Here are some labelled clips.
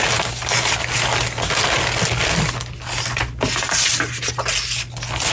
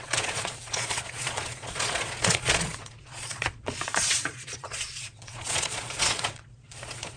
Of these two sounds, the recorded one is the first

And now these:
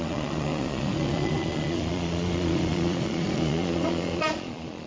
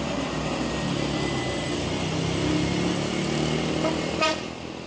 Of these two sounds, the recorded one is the second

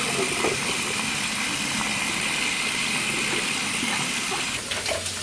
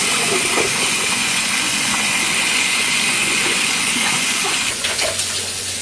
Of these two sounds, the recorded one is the first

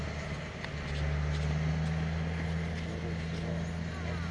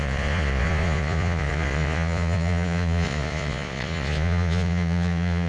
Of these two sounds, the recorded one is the first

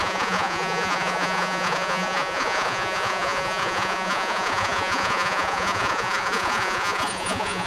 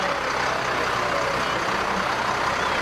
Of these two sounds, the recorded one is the second